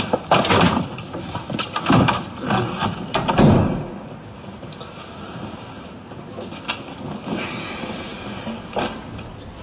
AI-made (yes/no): no